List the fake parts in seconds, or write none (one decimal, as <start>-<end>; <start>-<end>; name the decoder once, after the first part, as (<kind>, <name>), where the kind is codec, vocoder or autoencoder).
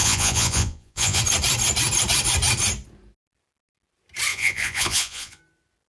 0.0-1.2 (vocoder, Vocos); 4.3-5.4